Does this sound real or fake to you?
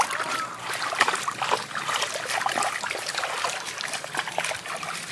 real